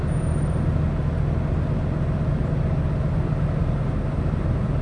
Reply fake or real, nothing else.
real